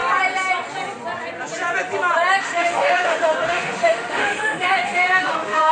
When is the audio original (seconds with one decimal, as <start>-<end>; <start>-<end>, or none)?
0.0-2.4